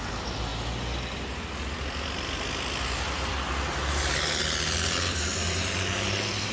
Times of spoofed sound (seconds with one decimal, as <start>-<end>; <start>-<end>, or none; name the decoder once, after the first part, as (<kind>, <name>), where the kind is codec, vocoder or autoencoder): none